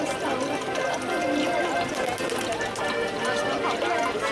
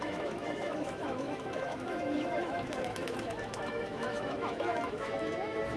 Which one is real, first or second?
first